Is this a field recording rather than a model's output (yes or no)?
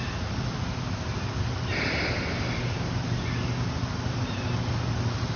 yes